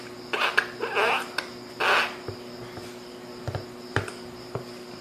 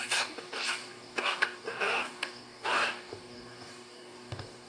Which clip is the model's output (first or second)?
second